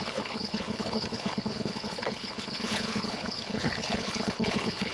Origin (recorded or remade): remade